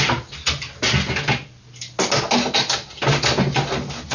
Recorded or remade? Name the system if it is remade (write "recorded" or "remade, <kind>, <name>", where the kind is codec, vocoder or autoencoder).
recorded